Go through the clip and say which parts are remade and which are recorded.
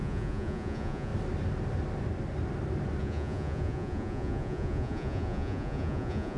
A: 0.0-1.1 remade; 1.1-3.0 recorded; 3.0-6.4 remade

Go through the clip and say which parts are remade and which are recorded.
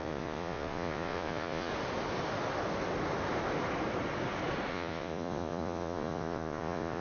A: 0.0-1.7 remade; 1.7-4.7 recorded; 4.7-7.0 remade